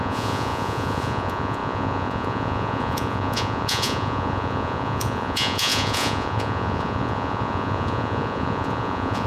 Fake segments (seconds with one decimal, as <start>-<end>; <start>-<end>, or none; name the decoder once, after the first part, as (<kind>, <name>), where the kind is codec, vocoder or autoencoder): 0.0-9.3 (vocoder, Vocos)